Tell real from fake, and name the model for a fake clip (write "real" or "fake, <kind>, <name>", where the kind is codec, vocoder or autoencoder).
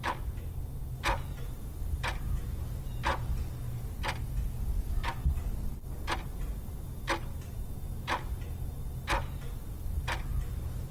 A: real